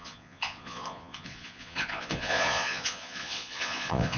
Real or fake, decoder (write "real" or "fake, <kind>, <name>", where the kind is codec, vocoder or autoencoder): fake, vocoder, Vocos